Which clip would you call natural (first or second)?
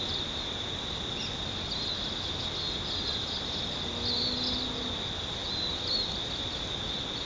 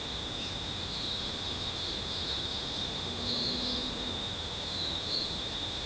first